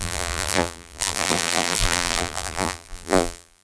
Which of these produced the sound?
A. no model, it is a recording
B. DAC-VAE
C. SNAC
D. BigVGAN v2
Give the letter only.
D